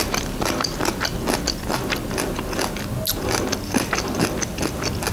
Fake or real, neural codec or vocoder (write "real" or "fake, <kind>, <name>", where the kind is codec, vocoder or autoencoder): real